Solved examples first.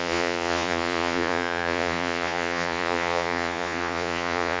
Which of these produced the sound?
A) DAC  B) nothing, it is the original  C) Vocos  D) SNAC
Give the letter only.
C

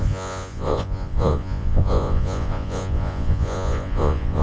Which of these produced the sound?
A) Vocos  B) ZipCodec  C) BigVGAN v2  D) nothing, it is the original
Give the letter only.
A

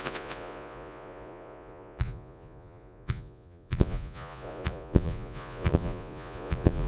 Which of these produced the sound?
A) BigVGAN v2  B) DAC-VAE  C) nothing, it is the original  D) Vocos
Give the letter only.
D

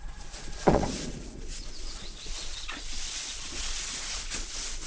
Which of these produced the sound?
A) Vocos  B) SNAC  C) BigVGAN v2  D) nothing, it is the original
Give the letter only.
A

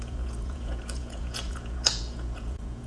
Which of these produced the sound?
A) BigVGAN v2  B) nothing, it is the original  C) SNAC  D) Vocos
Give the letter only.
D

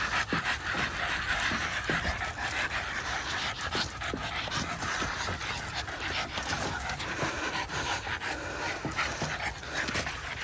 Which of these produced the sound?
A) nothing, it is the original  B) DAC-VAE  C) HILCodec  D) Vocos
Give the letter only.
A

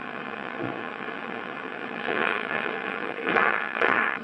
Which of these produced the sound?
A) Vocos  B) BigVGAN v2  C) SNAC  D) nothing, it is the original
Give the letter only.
A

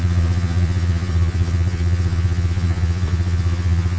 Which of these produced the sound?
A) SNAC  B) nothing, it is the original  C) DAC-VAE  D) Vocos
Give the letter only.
D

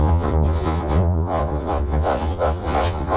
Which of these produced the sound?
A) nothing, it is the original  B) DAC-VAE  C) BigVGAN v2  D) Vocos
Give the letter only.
D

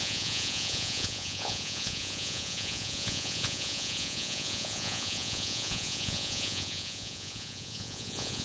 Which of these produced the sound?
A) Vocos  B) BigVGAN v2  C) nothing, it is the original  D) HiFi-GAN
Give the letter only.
A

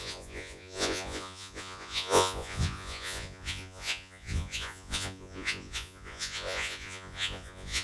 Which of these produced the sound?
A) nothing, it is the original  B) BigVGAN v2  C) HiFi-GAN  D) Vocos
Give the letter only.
D